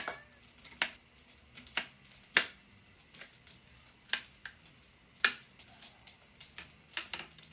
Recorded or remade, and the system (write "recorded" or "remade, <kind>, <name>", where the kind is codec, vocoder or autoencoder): recorded